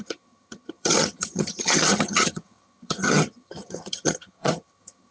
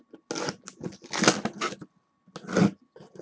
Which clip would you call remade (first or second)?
first